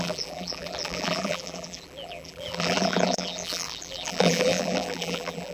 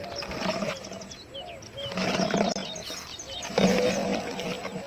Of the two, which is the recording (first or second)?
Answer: second